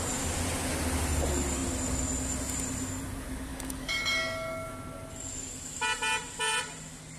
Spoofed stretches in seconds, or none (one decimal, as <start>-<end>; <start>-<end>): 3.5-4.7